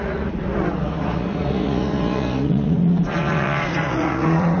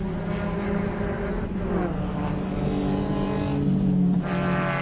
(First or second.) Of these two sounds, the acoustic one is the second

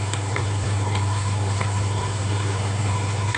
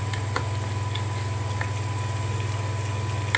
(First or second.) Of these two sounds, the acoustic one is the second